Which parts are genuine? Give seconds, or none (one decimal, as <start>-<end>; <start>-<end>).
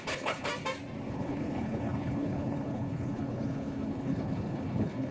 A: 0.5-1.1